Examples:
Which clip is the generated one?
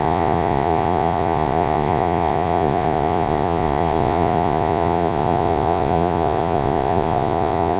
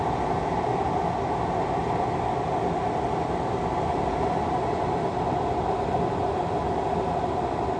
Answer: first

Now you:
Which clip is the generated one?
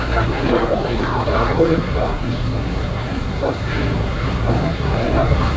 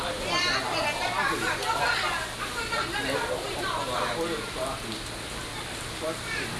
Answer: first